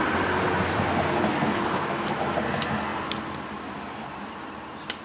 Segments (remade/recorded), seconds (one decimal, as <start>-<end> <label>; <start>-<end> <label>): 0.0-1.3 recorded; 1.3-2.3 remade; 2.3-5.0 recorded